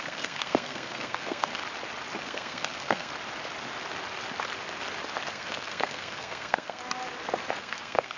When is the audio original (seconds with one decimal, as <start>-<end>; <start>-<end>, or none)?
1.6-2.2; 3.1-5.3; 6.8-7.6